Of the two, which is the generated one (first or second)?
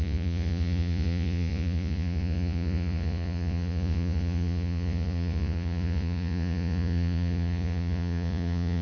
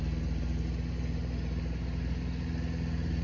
first